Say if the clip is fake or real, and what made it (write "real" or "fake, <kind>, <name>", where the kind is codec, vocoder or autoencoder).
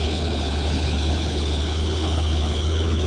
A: fake, codec, HILCodec